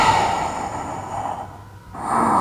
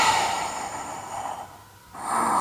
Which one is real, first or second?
first